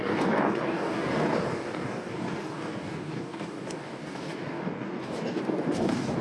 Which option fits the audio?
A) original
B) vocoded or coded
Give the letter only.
B